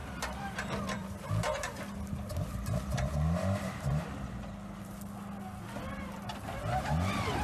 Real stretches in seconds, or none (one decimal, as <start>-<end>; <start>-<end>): 4.4-7.4